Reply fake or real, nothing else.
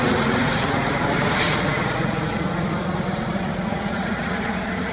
fake